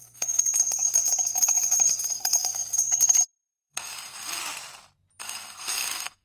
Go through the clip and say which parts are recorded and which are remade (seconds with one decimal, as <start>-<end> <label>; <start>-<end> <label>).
0.0-4.4 remade; 4.4-5.2 recorded; 5.2-6.2 remade